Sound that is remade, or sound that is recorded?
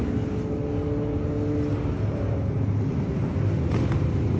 recorded